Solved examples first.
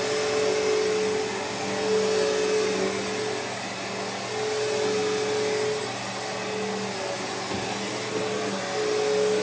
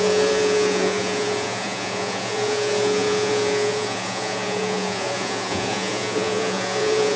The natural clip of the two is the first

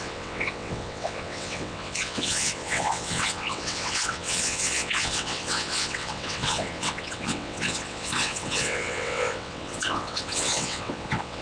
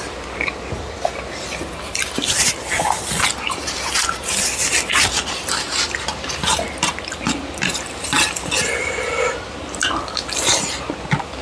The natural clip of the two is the second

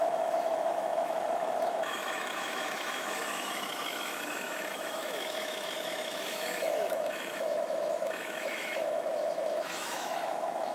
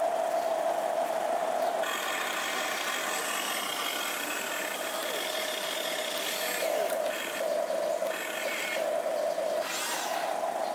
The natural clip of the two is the second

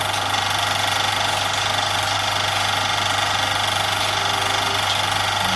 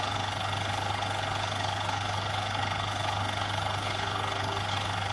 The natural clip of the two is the first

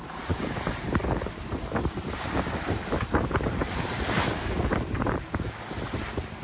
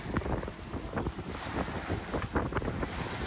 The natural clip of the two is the second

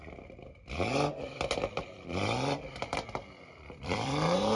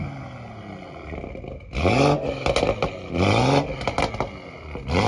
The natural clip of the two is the second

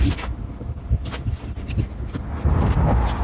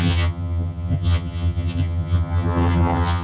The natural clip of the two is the first